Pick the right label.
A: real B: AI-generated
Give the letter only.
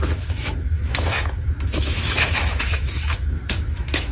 B